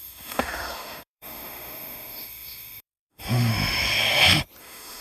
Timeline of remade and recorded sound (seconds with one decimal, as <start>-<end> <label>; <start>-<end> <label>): 0.0-3.5 remade; 3.5-4.6 recorded; 4.6-5.0 remade